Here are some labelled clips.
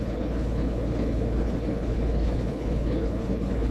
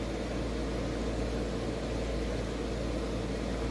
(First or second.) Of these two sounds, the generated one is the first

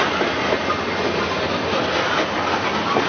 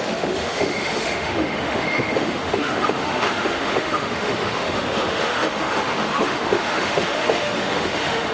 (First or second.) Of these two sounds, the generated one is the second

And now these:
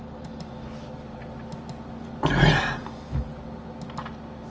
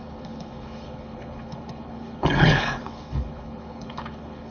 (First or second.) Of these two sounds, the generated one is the second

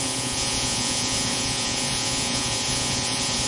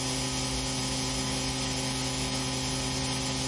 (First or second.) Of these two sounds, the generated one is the first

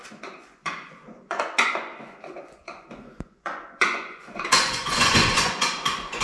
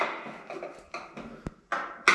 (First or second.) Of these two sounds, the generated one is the first